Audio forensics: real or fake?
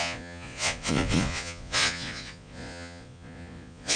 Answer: fake